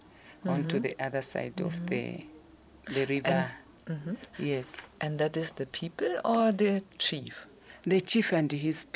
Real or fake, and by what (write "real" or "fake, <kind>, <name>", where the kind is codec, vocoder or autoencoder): fake, vocoder, BigVGAN v2